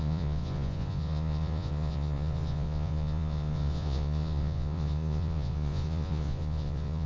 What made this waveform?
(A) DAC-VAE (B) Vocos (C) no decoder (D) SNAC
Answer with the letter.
B